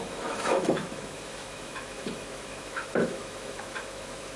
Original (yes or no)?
no